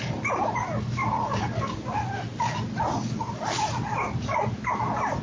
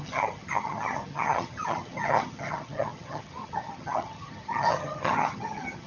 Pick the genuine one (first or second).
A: first